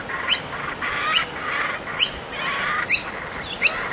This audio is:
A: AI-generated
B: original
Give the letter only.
B